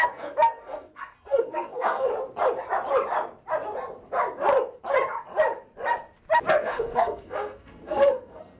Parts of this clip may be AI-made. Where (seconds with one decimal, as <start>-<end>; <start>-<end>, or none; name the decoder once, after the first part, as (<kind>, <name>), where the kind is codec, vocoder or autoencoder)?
0.0-2.1 (codec, SNAC); 6.5-8.6